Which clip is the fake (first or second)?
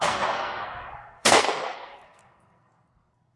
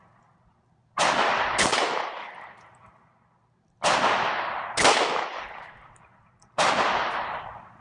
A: first